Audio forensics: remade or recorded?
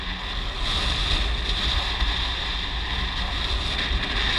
recorded